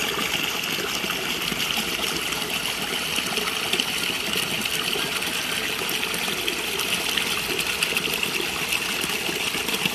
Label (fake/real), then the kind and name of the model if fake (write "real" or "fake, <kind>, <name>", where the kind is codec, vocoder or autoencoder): real